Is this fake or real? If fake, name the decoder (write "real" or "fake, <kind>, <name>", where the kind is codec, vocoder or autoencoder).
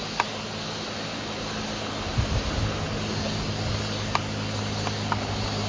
real